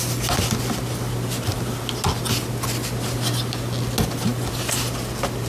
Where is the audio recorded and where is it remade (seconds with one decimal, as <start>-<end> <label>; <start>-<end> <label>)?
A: 0.0-5.5 recorded